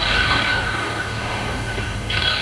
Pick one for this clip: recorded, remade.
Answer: remade